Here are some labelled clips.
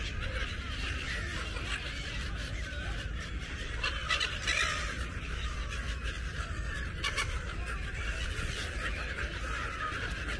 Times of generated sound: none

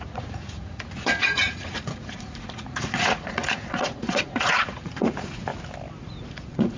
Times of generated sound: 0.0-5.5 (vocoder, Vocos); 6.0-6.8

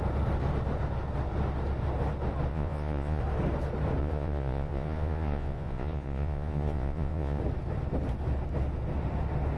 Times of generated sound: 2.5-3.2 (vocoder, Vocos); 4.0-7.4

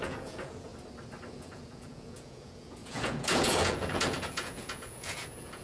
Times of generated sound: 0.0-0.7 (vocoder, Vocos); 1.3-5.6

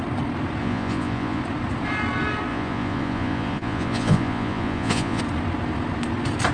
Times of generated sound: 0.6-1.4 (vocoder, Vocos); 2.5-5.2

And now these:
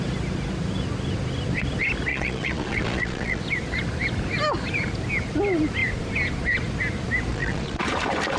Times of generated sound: 2.1-3.4 (vocoder, Vocos); 7.3-7.8

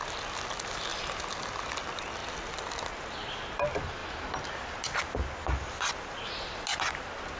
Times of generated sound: none

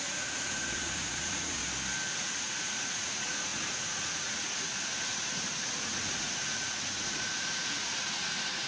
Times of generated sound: 0.0-1.6 (vocoder, Vocos); 2.2-8.7